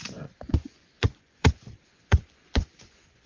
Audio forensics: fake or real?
fake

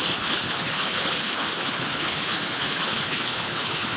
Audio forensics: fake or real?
fake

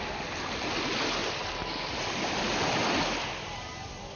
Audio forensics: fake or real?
real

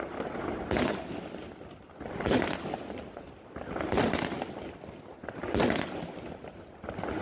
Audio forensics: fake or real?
real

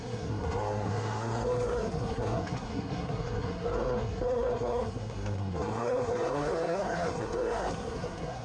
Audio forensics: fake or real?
fake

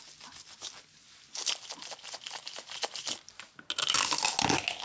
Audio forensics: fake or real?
real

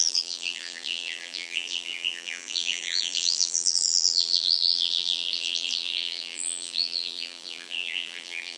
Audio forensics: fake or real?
fake